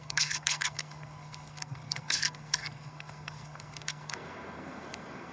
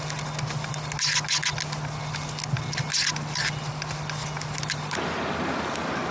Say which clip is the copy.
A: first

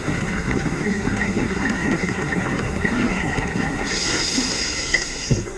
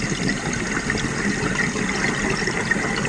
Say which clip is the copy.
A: first